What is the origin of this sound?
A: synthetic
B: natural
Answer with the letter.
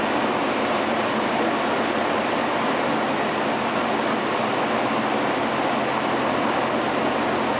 B